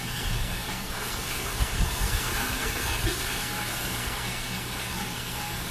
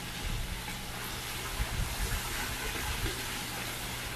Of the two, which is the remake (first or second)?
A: first